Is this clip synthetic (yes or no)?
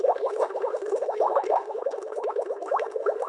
yes